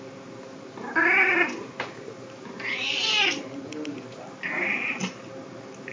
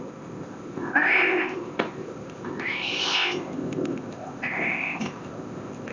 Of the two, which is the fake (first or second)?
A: second